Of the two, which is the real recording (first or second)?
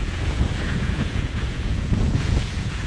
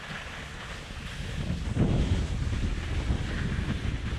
second